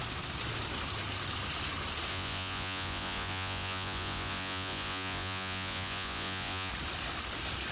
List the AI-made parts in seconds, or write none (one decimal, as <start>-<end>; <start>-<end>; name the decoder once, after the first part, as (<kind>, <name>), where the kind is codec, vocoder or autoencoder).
2.1-6.7 (vocoder, Vocos)